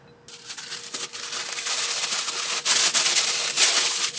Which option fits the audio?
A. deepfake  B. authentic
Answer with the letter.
B